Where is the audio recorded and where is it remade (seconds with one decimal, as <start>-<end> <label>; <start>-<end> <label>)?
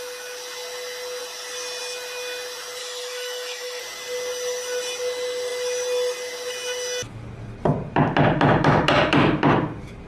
0.0-2.8 recorded; 2.8-3.8 remade; 3.8-10.1 recorded